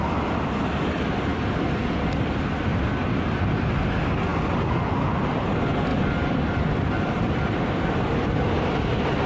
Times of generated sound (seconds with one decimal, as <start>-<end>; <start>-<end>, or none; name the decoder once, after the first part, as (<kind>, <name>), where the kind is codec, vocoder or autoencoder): 1.3-2.6 (vocoder, BigVGAN v2); 3.0-3.8; 5.9-8.6